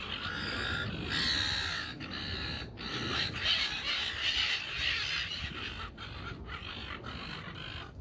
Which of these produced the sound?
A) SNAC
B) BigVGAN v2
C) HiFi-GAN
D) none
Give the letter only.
D